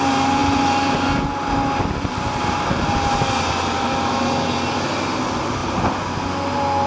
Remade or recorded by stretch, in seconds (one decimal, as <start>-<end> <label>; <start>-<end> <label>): 0.0-6.9 recorded